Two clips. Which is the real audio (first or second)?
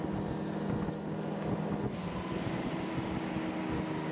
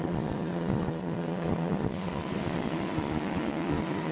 first